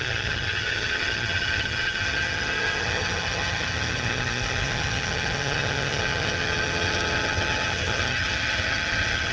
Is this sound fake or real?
fake